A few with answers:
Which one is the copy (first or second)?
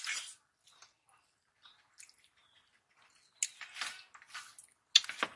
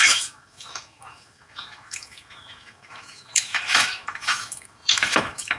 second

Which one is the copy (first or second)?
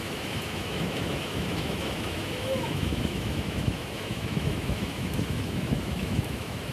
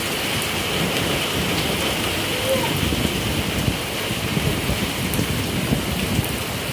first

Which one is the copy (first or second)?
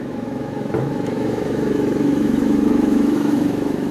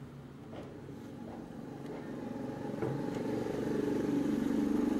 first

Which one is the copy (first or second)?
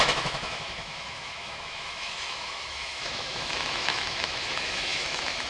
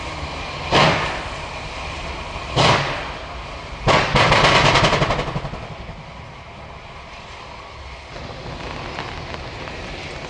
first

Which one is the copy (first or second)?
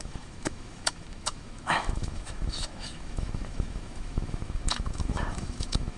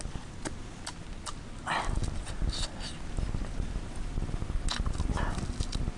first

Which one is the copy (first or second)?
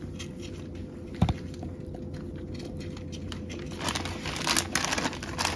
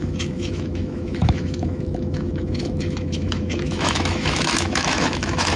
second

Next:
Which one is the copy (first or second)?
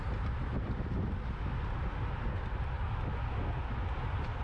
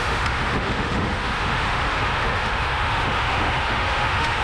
second